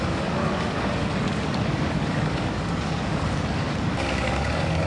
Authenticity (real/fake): fake